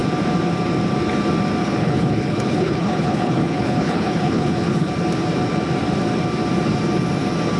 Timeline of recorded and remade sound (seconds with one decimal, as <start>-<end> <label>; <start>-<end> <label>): 0.0-1.6 recorded; 1.6-4.9 remade; 4.9-7.6 recorded